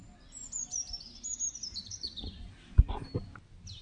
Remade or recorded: recorded